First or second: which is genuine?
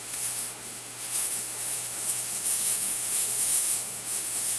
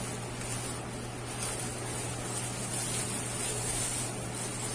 second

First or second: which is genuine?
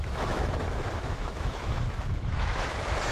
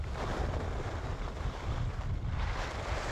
second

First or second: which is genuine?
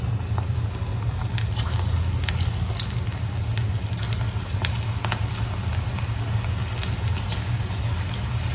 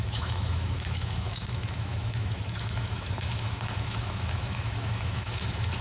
first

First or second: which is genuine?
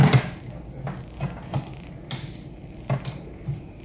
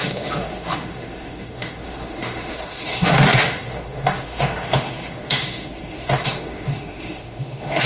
first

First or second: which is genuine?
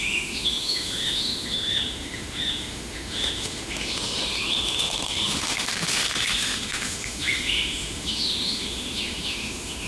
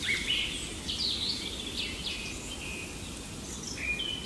second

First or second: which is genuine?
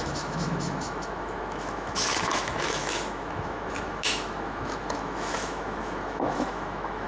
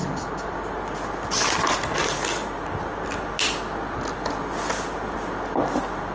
second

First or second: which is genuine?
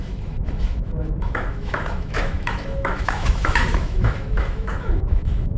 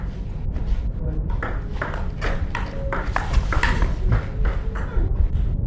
second